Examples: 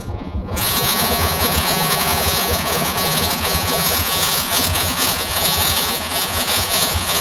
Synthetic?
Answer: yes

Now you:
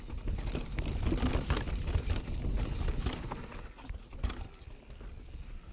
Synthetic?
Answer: no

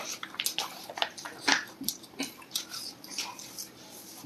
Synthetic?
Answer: no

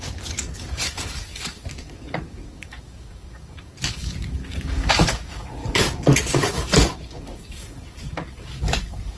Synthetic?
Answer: yes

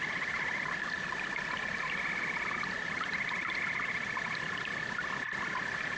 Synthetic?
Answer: no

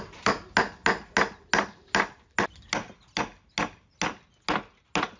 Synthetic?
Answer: no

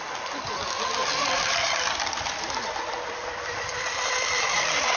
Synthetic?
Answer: no